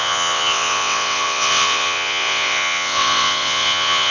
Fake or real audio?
fake